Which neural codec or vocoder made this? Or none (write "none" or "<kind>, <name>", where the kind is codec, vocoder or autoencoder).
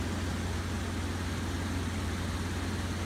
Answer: none